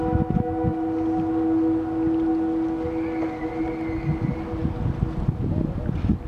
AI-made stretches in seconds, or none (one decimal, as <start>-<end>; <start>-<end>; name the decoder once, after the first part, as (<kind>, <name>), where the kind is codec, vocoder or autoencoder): none